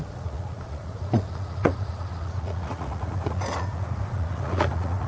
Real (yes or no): no